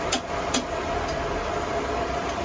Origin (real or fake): real